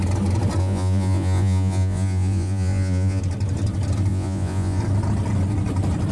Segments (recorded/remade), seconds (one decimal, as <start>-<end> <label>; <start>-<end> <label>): 0.0-0.6 recorded; 0.6-3.2 remade; 3.2-4.1 recorded; 4.1-4.8 remade; 4.8-6.1 recorded